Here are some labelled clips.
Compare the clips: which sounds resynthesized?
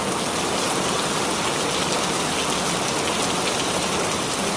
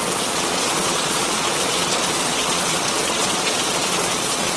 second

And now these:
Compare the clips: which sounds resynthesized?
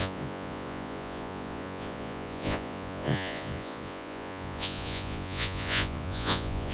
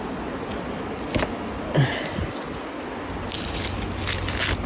first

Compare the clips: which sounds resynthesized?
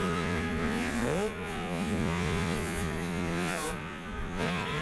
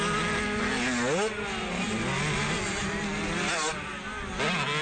first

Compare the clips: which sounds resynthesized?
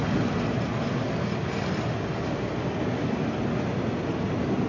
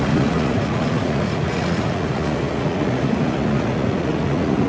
second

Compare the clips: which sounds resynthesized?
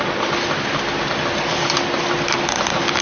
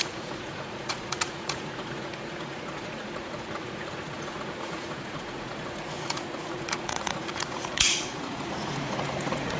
second